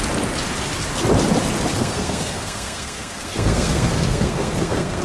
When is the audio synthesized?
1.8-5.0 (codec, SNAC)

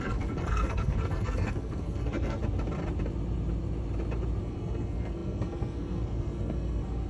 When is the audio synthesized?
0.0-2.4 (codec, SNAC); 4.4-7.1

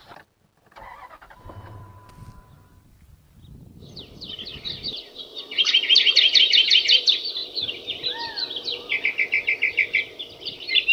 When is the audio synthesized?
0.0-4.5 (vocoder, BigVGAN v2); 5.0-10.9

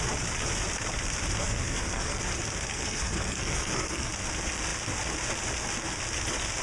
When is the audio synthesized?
1.4-2.2 (codec, SNAC); 2.7-4.1